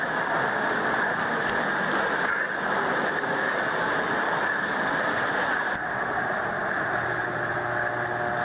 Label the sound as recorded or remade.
recorded